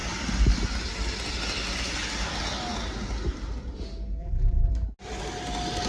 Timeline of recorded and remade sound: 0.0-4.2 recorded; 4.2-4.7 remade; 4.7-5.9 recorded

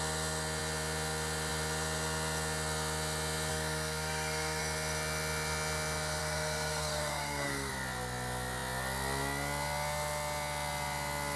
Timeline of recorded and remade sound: 0.0-3.5 recorded; 3.5-4.6 remade; 4.6-6.2 recorded; 6.2-7.7 remade; 7.7-11.4 recorded

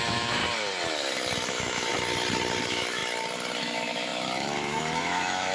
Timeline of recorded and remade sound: 0.0-0.4 remade; 0.4-1.5 recorded; 1.5-1.9 remade; 1.9-2.6 recorded; 2.6-3.0 remade; 3.0-3.6 recorded; 3.6-5.5 remade

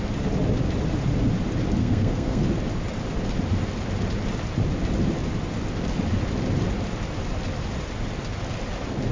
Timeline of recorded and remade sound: 0.0-1.8 recorded; 1.8-2.4 remade; 2.4-9.1 recorded

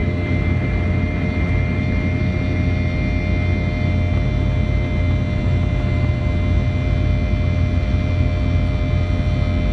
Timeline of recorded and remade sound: 0.0-9.7 recorded

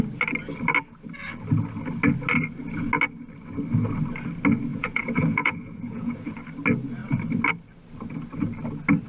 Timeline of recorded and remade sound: 0.0-4.7 recorded; 4.7-6.3 remade; 6.3-9.1 recorded

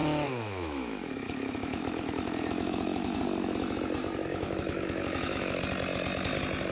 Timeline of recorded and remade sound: 0.0-3.2 remade; 3.2-4.3 recorded; 4.3-5.6 remade; 5.6-6.7 recorded

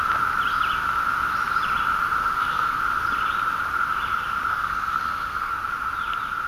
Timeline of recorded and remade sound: 0.0-2.2 recorded; 2.2-2.8 remade; 2.8-4.5 recorded; 4.5-5.5 remade; 5.5-6.5 recorded